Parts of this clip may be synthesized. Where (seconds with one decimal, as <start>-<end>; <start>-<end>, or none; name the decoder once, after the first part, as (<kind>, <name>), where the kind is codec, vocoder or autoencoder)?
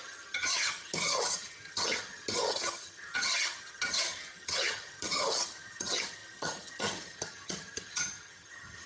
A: 0.0-8.9 (vocoder, HiFi-GAN)